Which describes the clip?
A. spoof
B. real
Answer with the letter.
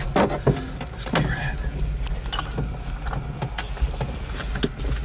B